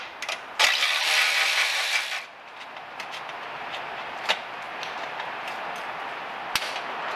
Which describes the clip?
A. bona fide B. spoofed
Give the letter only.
A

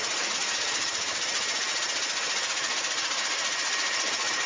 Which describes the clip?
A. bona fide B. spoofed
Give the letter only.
A